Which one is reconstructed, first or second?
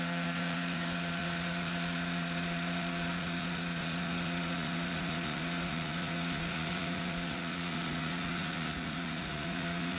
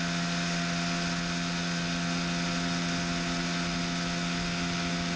first